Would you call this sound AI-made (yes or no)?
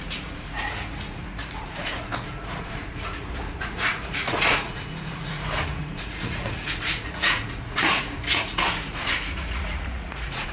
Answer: yes